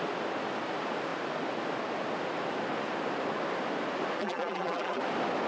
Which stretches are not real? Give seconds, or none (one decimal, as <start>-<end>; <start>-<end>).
4.2-5.0